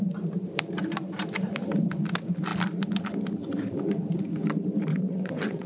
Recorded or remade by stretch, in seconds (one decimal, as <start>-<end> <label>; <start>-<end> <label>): 0.0-4.9 recorded; 4.9-5.7 remade